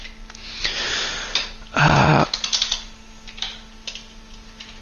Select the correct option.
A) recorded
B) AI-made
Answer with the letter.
A